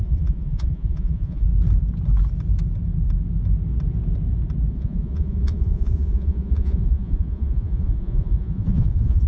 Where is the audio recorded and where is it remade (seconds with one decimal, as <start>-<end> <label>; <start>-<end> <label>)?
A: 0.0-1.5 remade; 1.5-4.7 recorded; 4.7-9.3 remade